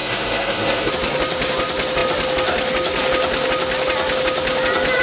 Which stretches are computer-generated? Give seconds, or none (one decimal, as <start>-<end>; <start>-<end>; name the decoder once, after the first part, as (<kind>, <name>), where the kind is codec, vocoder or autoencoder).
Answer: 0.0-0.9 (codec, SNAC)